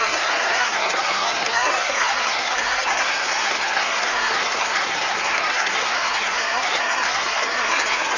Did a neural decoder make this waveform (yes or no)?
yes